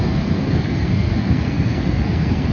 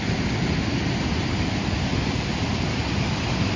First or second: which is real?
second